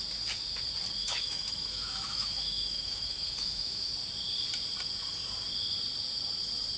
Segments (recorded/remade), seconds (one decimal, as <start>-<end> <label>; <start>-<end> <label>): 0.0-1.0 recorded; 1.0-3.9 remade; 3.9-6.8 recorded